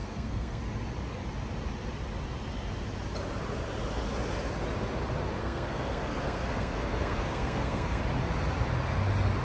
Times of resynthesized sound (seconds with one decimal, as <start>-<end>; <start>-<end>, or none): 0.0-0.6; 5.4-8.0